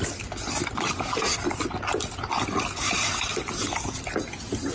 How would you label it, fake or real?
real